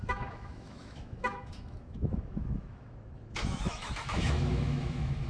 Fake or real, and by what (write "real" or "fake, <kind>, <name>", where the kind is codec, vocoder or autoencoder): fake, autoencoder, DAC-VAE